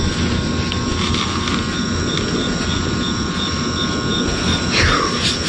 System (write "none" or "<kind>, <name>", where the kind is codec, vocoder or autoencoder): none